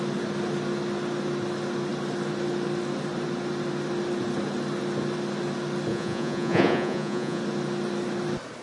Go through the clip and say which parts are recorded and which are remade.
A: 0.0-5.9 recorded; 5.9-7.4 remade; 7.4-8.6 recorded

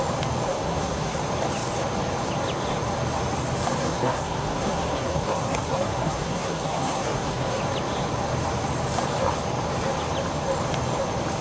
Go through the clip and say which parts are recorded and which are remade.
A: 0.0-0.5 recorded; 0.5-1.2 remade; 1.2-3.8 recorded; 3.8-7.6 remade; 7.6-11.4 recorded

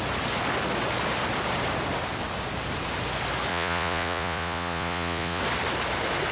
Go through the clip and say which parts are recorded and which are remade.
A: 0.0-3.5 recorded; 3.5-5.4 remade; 5.4-6.3 recorded